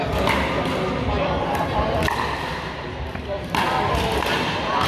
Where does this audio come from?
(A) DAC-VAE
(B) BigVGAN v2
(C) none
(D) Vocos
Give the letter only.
B